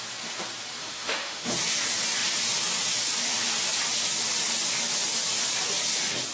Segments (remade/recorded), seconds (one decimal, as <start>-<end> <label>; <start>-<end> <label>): 0.0-0.8 recorded; 0.8-1.5 remade; 1.5-6.3 recorded